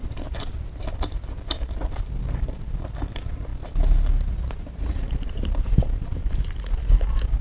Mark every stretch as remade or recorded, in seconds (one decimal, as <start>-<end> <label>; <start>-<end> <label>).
0.0-3.5 remade; 3.5-4.3 recorded; 4.3-7.4 remade